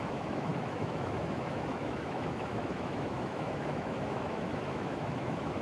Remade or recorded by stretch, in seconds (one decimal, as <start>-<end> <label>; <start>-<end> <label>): 0.0-5.6 remade